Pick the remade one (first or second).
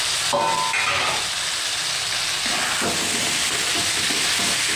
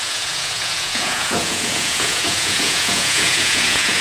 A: second